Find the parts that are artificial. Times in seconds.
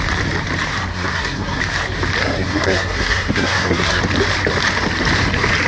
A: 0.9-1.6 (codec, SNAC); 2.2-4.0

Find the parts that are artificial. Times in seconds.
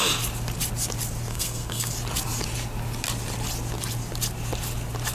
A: 1.3-1.9 (codec, SNAC)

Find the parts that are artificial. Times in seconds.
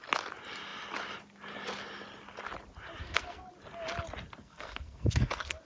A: 3.0-3.5 (codec, SNAC); 4.4-5.6